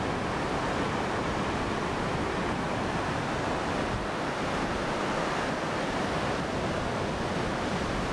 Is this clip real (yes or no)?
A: yes